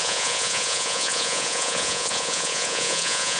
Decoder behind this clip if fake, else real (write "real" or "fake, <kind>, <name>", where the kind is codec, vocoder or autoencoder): fake, vocoder, Vocos